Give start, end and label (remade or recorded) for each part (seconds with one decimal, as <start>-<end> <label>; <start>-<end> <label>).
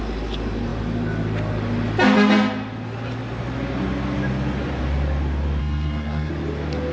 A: 0.0-5.6 recorded; 5.6-6.3 remade; 6.3-6.9 recorded